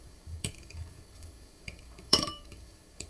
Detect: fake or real fake